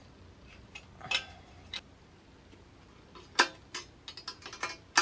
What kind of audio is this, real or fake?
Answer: real